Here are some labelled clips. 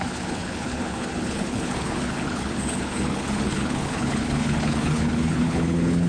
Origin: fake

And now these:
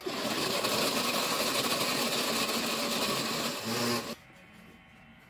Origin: real